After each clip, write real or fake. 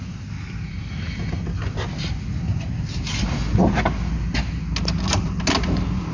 real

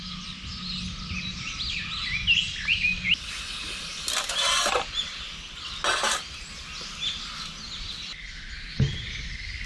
real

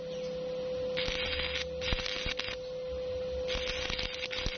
real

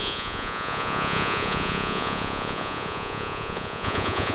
fake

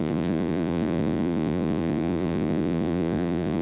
fake